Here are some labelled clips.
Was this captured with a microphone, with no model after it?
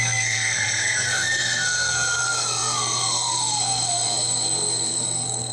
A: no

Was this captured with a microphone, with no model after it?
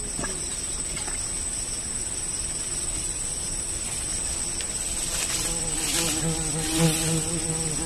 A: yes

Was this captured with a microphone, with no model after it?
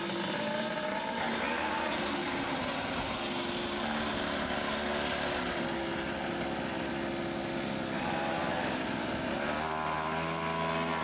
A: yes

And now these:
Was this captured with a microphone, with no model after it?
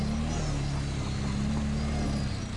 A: yes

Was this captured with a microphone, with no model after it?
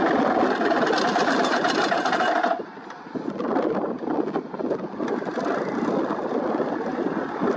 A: yes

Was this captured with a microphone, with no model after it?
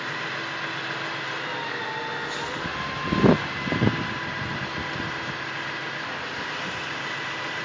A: yes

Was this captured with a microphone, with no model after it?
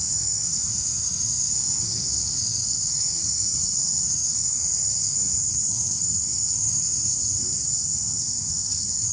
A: no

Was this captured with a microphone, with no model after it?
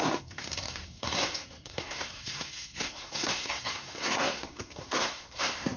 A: no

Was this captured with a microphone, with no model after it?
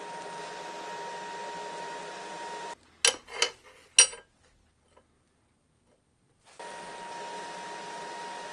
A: yes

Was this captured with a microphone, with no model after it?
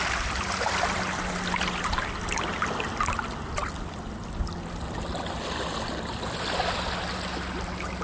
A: yes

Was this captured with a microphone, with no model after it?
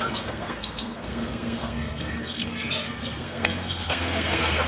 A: no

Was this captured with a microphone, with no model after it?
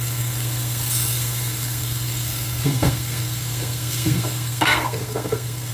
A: no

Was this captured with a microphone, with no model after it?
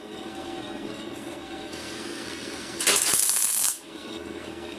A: no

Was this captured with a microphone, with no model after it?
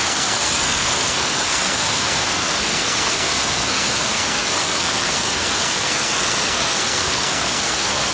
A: no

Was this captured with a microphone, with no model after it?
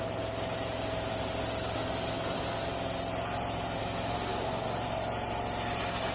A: yes